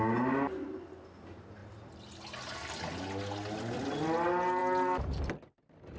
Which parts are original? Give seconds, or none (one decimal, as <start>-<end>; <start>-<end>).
0.0-6.0